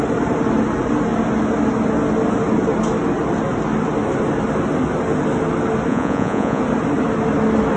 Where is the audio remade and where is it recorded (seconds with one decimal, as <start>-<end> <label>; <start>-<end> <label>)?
0.0-5.9 recorded; 5.9-6.6 remade; 6.6-7.8 recorded